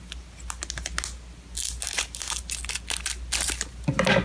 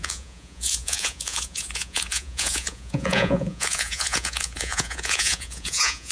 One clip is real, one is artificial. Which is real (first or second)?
first